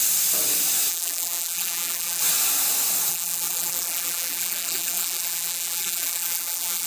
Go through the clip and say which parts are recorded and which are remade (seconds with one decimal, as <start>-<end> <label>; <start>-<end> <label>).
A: 0.0-0.9 recorded; 0.9-2.2 remade; 2.2-3.1 recorded; 3.1-6.9 remade